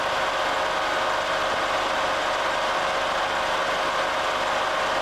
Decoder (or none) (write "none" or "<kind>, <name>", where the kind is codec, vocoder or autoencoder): none